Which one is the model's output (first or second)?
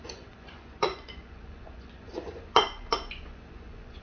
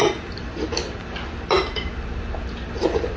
first